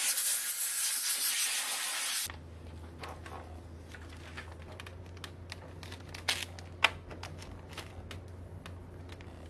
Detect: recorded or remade recorded